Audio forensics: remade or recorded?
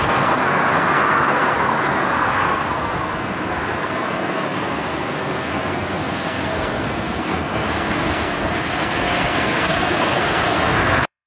remade